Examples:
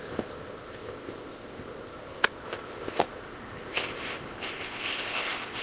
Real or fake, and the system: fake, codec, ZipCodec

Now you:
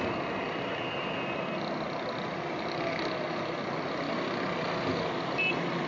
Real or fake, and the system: real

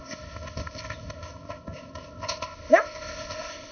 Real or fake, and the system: fake, codec, ZipCodec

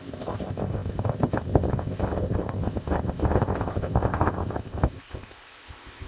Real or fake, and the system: fake, codec, ZipCodec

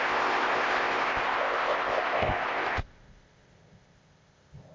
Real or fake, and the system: fake, codec, ZipCodec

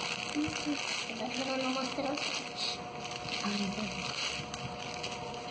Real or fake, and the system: real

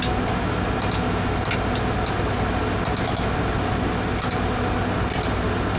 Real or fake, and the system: real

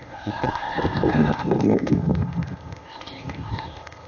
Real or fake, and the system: fake, codec, ZipCodec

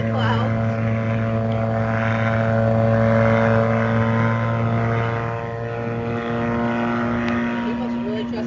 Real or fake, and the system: real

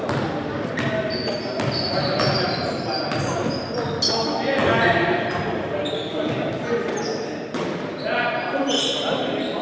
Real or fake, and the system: real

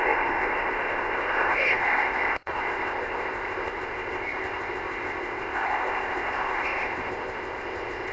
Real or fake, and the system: fake, codec, ZipCodec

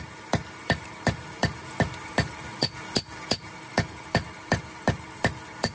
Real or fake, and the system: real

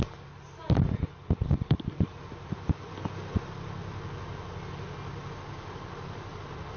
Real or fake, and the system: real